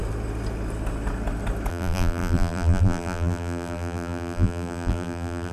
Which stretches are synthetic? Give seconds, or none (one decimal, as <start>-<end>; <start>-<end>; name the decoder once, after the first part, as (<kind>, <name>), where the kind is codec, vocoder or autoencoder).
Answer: 1.7-5.5 (vocoder, BigVGAN v2)